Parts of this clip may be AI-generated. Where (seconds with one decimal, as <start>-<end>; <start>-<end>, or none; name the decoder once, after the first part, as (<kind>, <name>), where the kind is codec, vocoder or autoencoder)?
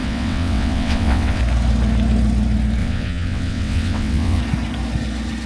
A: 0.0-1.4 (vocoder, WaveNeXt); 2.8-4.4